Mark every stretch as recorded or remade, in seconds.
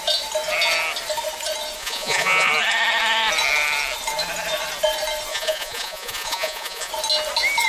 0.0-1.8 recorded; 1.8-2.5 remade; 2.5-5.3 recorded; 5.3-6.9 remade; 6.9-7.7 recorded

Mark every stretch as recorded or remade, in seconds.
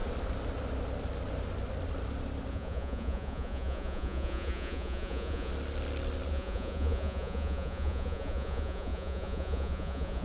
0.0-2.5 recorded; 2.5-5.5 remade; 5.5-6.3 recorded; 6.3-10.2 remade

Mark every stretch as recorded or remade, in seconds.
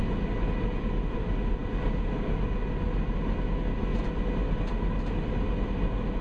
0.0-6.2 recorded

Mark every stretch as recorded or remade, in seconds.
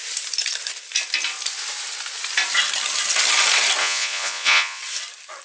0.0-3.8 recorded; 3.8-4.8 remade; 4.8-5.4 recorded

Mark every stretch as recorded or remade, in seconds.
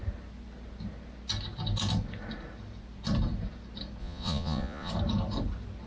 0.0-4.0 recorded; 4.0-4.9 remade; 4.9-5.9 recorded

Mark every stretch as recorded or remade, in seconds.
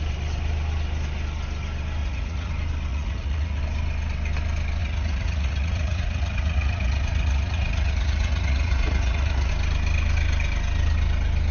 0.0-2.0 recorded; 2.0-2.5 remade; 2.5-2.9 recorded; 2.9-3.6 remade; 3.6-4.8 recorded; 4.8-9.5 remade; 9.5-11.5 recorded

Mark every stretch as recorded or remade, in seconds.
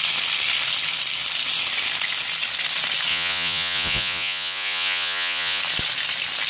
0.0-3.1 recorded; 3.1-5.6 remade; 5.6-6.5 recorded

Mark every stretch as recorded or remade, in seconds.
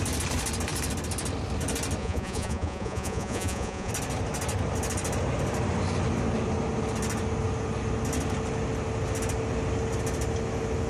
0.0-2.0 recorded; 2.0-3.9 remade; 3.9-10.9 recorded